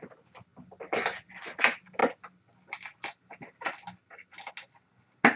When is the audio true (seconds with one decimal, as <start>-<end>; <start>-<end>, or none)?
0.0-5.4